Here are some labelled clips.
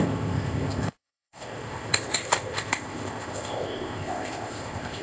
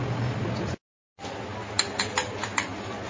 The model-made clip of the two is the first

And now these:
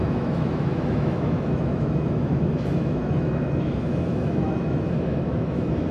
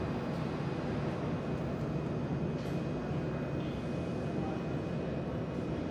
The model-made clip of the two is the first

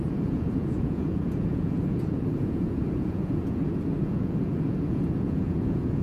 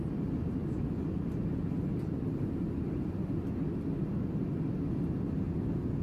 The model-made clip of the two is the first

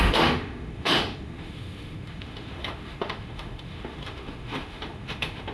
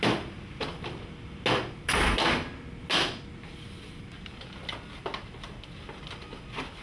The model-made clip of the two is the first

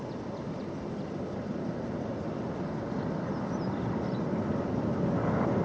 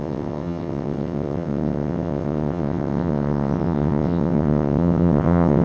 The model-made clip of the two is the second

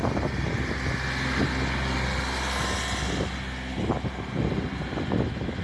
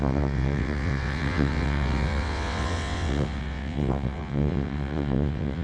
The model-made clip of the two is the second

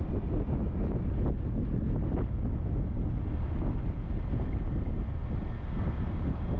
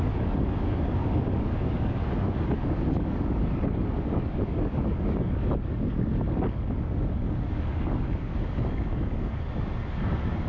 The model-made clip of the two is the second